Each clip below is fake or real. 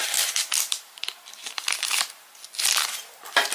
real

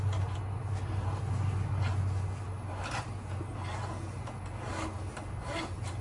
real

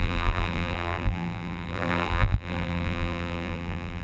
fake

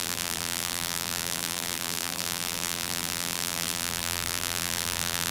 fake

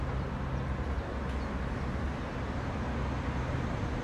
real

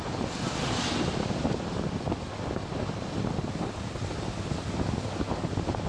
real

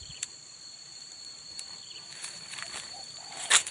fake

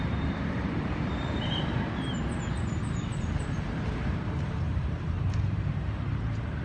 fake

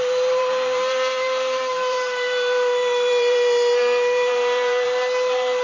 fake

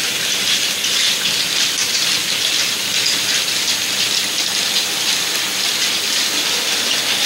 real